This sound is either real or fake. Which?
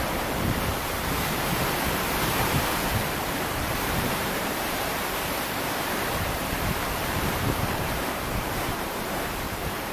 fake